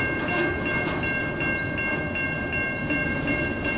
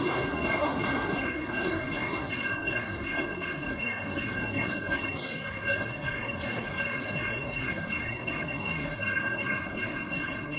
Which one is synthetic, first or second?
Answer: second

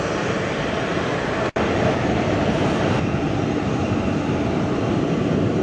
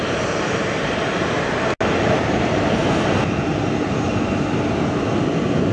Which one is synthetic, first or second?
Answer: first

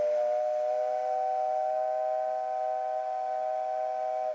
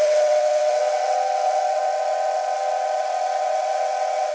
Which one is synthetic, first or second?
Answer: second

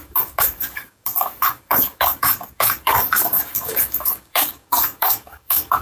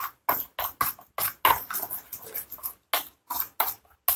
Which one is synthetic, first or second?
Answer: first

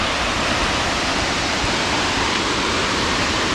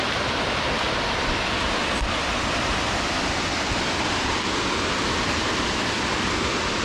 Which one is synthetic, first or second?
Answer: first